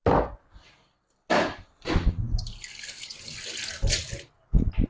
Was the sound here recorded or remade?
recorded